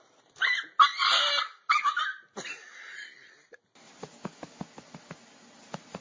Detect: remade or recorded recorded